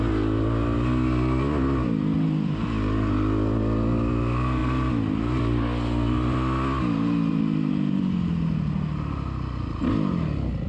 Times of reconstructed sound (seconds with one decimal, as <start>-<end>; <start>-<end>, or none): none

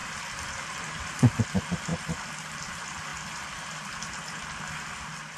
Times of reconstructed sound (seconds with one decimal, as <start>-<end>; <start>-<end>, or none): 0.0-1.4; 1.9-2.6

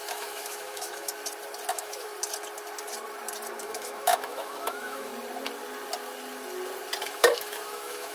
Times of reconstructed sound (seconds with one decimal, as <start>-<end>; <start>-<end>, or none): 0.0-1.1; 1.7-2.1; 3.6-5.1; 7.0-8.1

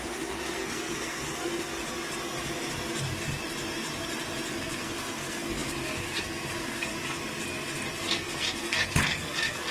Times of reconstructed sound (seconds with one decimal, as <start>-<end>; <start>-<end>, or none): 0.0-1.7; 4.5-6.9; 8.0-9.7

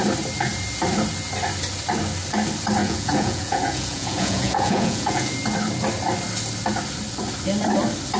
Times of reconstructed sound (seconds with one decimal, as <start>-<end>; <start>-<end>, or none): 2.8-5.3

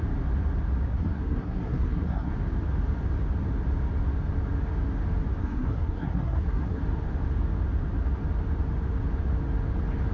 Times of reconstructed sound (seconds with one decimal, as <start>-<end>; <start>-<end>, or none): 0.9-2.3; 5.4-6.8

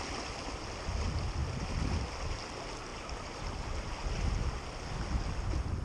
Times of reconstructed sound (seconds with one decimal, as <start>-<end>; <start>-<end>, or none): none